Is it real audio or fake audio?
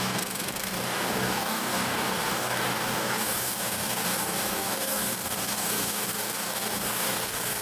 fake